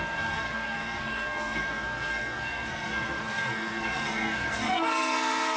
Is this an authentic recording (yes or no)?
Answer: no